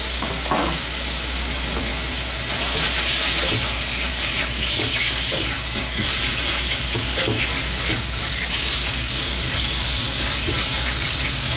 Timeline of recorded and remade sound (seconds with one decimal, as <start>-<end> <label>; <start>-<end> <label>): 0.0-1.9 remade; 1.9-4.1 recorded; 4.1-11.6 remade